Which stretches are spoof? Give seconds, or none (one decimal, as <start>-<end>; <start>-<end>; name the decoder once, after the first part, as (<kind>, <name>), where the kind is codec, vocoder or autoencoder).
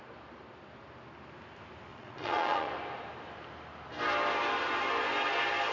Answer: 1.9-2.7 (vocoder, Vocos)